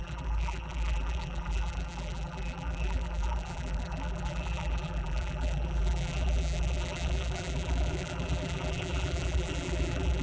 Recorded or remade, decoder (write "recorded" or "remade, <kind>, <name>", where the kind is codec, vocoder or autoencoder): remade, vocoder, BigVGAN v2